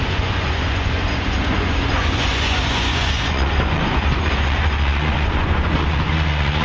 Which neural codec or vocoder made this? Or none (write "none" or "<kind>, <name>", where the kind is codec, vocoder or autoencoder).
vocoder, Vocos